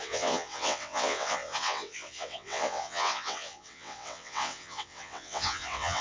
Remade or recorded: remade